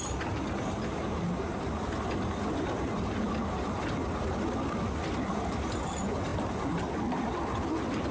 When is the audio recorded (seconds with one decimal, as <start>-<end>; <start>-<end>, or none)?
0.0-8.1